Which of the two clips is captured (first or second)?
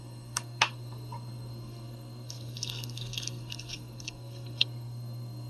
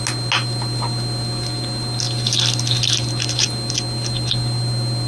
second